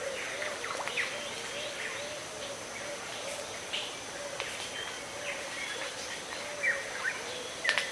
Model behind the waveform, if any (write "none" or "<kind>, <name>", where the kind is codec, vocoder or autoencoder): none